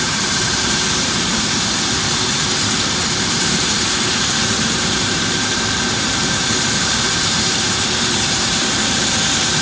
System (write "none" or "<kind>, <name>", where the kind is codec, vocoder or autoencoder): vocoder, BigVGAN v2